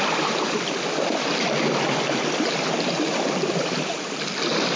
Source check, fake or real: real